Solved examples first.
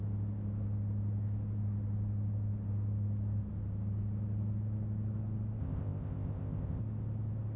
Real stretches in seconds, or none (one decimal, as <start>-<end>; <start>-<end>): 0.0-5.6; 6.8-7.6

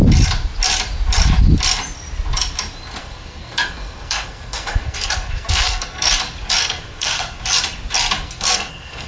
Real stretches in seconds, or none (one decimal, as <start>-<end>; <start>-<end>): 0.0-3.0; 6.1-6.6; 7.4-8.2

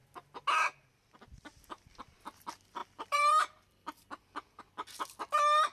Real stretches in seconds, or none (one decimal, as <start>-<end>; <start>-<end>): 0.0-2.8; 4.6-5.7

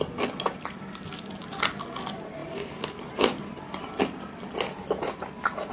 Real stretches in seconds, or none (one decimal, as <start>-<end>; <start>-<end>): 0.0-2.4; 4.0-5.7

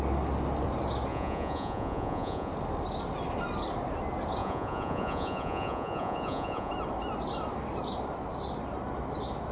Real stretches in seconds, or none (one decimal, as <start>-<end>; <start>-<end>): 0.0-1.1; 2.5-4.4; 6.7-9.5

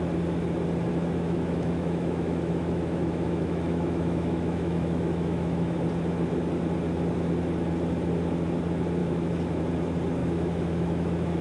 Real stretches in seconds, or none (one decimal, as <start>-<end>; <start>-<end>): 0.0-0.9; 5.8-9.0; 9.6-10.2

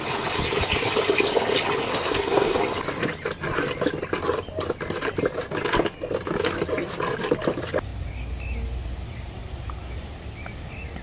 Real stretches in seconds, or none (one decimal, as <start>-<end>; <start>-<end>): 0.0-1.9; 2.6-11.0

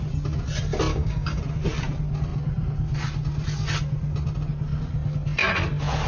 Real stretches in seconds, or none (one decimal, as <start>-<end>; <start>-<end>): 0.0-0.9; 1.4-6.1